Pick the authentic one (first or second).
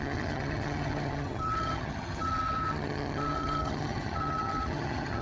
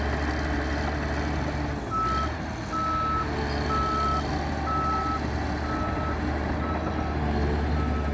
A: second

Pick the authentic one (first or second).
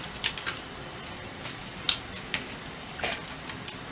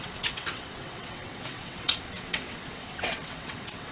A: first